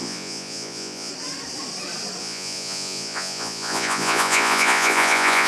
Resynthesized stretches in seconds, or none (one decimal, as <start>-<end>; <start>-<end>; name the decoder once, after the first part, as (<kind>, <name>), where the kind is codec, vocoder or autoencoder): 0.0-1.1 (vocoder, Vocos); 2.2-5.5